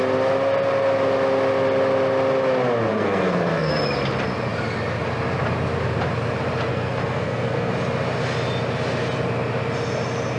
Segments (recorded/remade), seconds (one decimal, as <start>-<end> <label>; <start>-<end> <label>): 0.0-2.9 recorded; 2.9-3.7 remade; 3.7-6.7 recorded; 6.7-7.7 remade; 7.7-10.4 recorded